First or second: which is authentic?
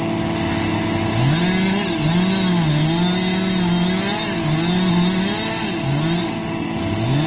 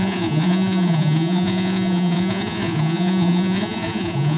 first